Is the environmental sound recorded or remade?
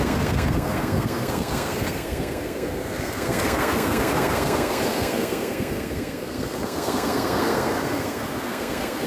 remade